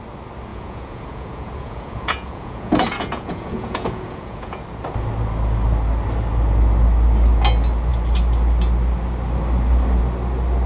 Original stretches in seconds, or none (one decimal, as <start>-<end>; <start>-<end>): 0.0-0.5; 4.6-10.7